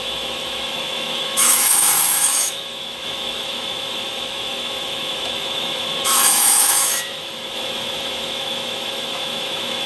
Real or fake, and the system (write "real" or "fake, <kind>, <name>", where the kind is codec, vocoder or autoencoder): fake, autoencoder, DAC-VAE